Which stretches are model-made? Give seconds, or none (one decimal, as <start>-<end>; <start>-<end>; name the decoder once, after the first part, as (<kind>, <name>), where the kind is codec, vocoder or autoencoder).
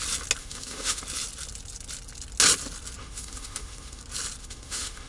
0.4-1.0 (autoencoder, DAC-VAE); 3.0-4.0; 4.4-5.1